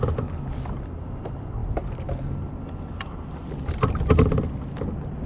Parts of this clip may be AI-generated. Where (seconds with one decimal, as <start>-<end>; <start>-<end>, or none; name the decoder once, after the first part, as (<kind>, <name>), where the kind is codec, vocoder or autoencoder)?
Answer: none